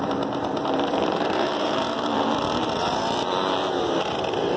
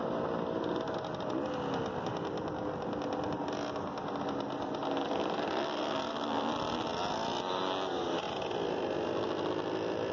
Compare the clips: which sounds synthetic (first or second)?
first